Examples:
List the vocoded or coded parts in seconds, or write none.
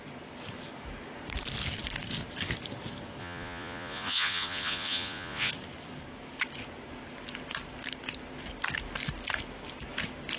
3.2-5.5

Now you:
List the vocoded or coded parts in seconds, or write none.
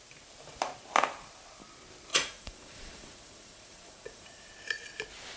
2.1-4.5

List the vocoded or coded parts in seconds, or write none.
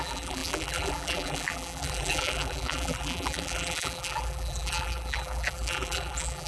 0.0-6.5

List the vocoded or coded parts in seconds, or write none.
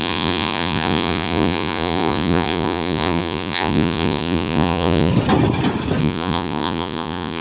0.0-5.1; 6.0-7.4